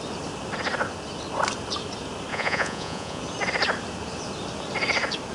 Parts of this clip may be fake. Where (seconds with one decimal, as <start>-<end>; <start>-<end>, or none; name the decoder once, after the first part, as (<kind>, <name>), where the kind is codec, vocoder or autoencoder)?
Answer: 2.3-3.2 (vocoder, Vocos)